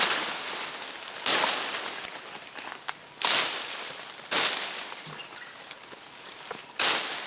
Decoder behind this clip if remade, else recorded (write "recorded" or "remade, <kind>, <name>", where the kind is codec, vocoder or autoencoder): recorded